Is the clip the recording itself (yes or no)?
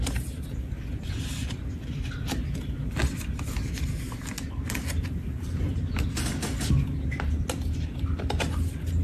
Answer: yes